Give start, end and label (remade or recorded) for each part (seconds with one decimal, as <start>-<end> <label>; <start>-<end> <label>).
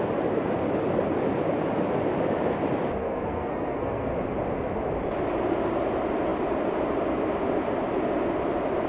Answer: 0.0-3.0 recorded; 3.0-4.1 remade; 4.1-8.9 recorded